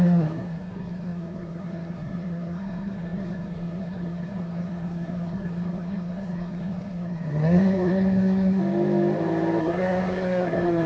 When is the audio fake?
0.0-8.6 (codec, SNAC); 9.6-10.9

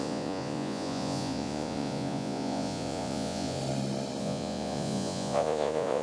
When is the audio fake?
0.0-3.6 (vocoder, Vocos); 4.2-6.0

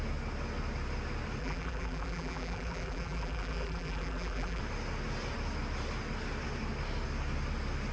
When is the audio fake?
1.4-4.6 (vocoder, BigVGAN v2)

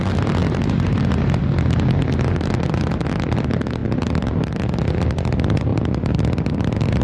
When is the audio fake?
0.4-1.0 (vocoder, BigVGAN v2)

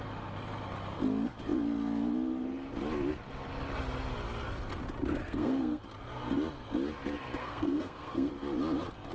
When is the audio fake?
5.2-5.8 (codec, SNAC); 7.4-8.3

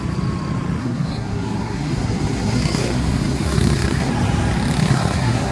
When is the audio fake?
0.8-4.1 (codec, SNAC); 4.8-5.5